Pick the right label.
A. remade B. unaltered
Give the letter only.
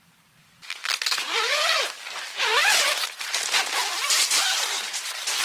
A